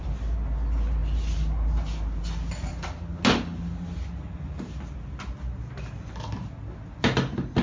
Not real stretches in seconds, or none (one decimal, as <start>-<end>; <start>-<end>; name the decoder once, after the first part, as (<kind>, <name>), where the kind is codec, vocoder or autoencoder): none